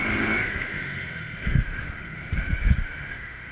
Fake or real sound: fake